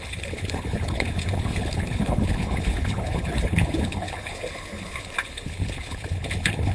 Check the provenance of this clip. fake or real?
fake